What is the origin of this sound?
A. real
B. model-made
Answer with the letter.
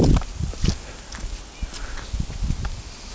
A